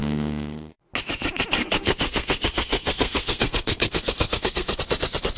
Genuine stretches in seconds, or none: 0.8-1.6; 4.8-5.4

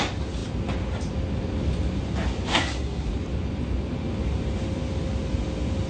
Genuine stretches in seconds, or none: 0.0-2.5; 3.1-5.9

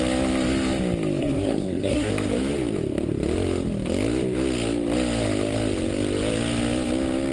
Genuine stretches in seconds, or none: 0.0-1.2; 2.1-7.3

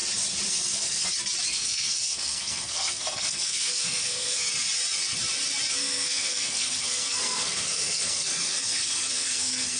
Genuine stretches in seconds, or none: 0.0-0.5; 1.0-1.5; 4.5-5.7

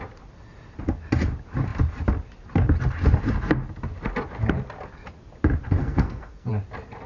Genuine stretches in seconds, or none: 0.0-5.8; 6.5-7.1

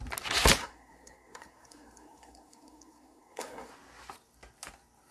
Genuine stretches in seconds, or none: 0.0-0.6; 3.7-5.1

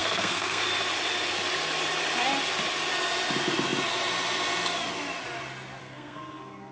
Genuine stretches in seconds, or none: 0.6-5.8

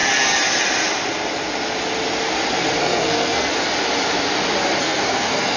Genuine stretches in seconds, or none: 0.0-2.8; 3.5-4.8